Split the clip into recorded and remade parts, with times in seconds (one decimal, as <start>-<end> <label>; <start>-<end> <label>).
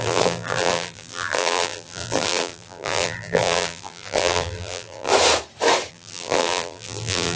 0.0-5.1 remade; 5.1-5.9 recorded; 5.9-7.4 remade